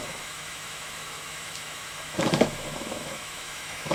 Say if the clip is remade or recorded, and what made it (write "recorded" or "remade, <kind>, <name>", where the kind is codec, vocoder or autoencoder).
remade, autoencoder, DAC-VAE